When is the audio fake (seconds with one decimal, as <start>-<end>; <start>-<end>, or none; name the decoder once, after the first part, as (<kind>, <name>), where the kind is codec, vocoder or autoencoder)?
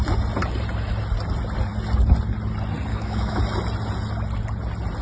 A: 2.9-3.4 (autoencoder, DAC-VAE)